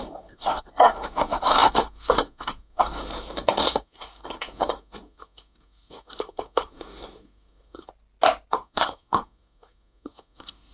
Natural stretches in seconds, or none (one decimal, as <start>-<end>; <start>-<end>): 7.9-8.5